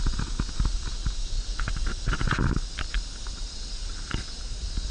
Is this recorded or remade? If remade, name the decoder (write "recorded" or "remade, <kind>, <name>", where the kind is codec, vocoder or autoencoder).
recorded